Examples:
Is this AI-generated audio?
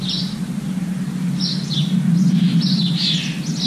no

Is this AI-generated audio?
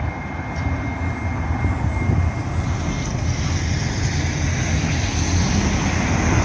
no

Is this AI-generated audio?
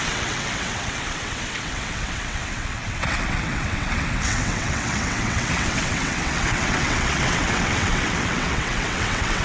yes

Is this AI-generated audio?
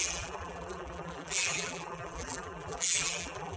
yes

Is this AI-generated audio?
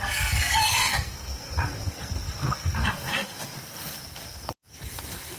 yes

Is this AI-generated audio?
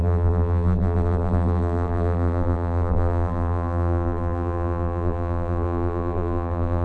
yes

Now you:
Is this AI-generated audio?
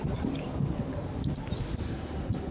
no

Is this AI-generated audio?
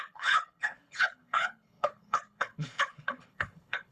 yes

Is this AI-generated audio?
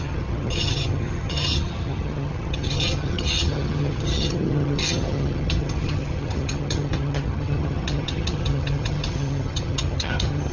yes